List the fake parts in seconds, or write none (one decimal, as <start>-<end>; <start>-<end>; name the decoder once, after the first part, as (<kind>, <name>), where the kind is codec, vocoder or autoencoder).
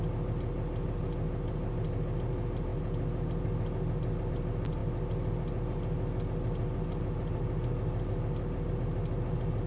none